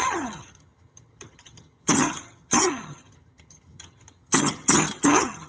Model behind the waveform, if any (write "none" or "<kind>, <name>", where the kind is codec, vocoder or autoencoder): vocoder, HiFi-GAN